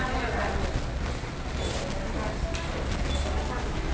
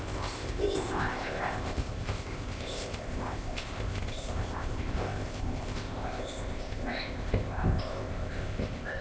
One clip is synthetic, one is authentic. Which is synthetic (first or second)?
second